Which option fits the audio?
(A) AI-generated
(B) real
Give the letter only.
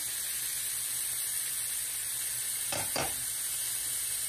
B